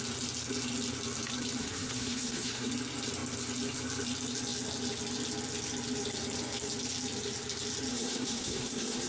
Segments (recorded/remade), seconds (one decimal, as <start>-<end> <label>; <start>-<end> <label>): 0.0-1.6 recorded; 1.6-2.7 remade; 2.7-7.9 recorded; 7.9-9.1 remade